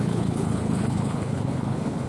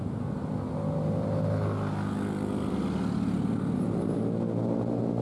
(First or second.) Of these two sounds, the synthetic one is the first